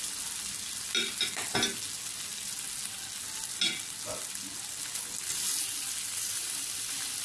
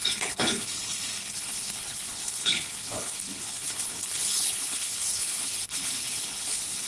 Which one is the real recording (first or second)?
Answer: first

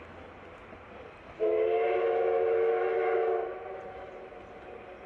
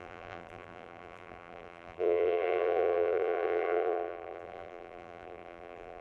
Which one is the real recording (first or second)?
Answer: first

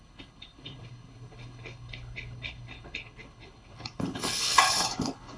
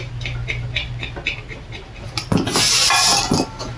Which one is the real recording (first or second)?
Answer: second